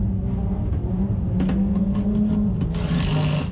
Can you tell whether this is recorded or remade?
recorded